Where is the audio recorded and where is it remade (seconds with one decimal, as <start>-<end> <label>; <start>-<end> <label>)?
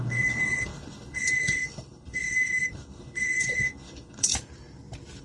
0.0-4.3 remade; 4.3-5.2 recorded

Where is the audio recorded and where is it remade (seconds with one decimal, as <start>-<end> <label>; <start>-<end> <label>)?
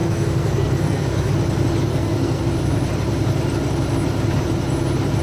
0.0-1.3 remade; 1.3-1.9 recorded; 1.9-2.4 remade; 2.4-5.2 recorded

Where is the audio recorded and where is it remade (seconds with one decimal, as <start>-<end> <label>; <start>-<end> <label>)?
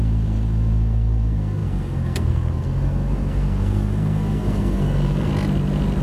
0.0-5.3 remade; 5.3-6.0 recorded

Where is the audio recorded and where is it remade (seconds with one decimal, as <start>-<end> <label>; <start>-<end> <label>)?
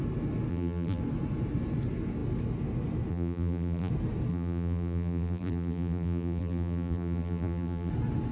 0.0-0.5 recorded; 0.5-1.0 remade; 1.0-3.1 recorded; 3.1-3.9 remade; 3.9-4.3 recorded; 4.3-7.9 remade; 7.9-8.3 recorded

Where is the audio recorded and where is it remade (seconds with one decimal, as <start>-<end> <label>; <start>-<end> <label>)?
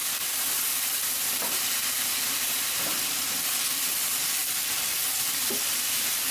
0.0-6.3 remade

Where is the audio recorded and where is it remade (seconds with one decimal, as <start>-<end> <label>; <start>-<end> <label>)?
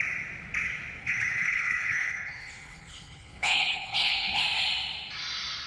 0.0-1.0 recorded; 1.0-4.4 remade; 4.4-5.7 recorded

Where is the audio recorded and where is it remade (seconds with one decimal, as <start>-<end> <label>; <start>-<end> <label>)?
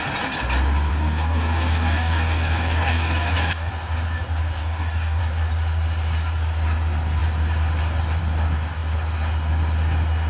0.0-0.9 recorded; 0.9-3.7 remade; 3.7-4.6 recorded; 4.6-5.2 remade; 5.2-10.3 recorded